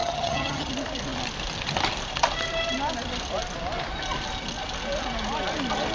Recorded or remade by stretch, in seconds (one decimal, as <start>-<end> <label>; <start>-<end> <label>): 0.0-0.7 remade; 0.7-5.9 recorded